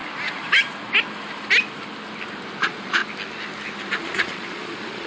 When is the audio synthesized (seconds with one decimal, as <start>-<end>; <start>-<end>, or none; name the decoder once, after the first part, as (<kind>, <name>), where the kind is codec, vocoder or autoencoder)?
2.6-3.0 (vocoder, Vocos); 4.0-5.1